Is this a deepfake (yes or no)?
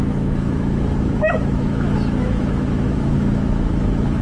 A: yes